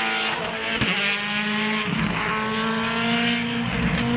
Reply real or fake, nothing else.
real